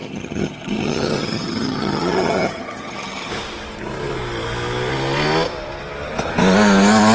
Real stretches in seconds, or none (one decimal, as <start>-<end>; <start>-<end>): 3.3-7.1